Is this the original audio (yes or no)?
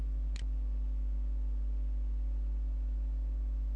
yes